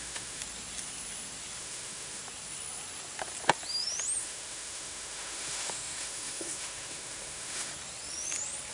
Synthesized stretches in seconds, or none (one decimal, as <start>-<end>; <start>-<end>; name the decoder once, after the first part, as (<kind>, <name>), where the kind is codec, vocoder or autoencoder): 0.0-0.4 (autoencoder, DAC-VAE); 1.6-2.2; 4.2-7.7